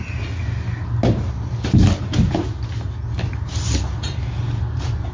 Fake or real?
real